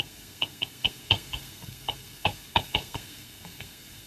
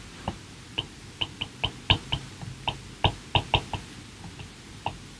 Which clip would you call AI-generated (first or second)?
first